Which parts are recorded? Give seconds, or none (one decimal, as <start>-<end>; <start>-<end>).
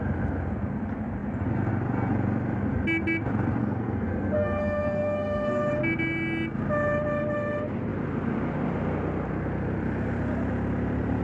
0.0-3.6; 5.7-11.2